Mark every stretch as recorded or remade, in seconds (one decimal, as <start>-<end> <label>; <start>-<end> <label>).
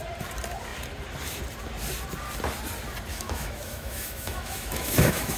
0.0-3.1 recorded; 3.1-5.4 remade